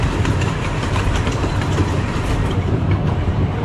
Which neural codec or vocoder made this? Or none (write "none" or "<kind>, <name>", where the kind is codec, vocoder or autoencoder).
vocoder, BigVGAN v2